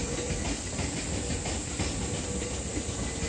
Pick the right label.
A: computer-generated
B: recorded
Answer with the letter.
B